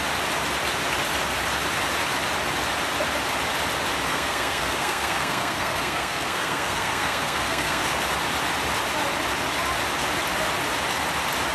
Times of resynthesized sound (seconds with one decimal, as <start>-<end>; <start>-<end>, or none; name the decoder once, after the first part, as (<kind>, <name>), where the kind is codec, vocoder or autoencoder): 4.1-7.8 (codec, SNAC)